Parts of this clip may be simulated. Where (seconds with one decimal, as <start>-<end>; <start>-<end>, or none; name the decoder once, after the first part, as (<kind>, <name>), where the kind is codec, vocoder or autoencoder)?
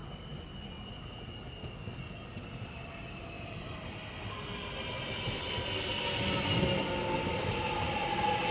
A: none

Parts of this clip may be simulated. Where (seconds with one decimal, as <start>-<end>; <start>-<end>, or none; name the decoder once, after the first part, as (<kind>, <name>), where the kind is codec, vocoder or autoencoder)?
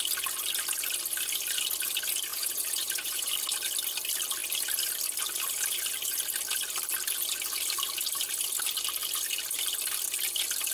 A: 2.3-3.3 (vocoder, Vocos)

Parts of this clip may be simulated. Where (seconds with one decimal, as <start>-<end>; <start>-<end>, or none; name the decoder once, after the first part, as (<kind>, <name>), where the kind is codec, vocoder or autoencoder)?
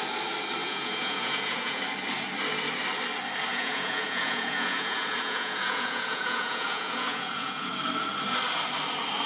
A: 0.6-1.8 (vocoder, Vocos); 3.5-7.7